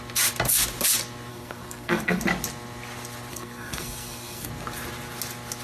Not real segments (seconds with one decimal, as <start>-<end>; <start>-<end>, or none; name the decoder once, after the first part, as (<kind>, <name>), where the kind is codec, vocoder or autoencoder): 1.3-2.2 (codec, SNAC); 3.3-4.5